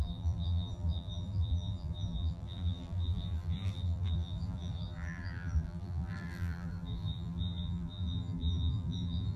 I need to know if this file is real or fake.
fake